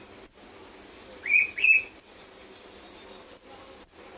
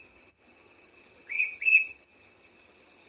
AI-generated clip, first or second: second